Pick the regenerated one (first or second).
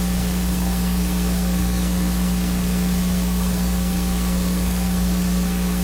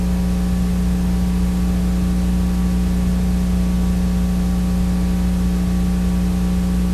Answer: first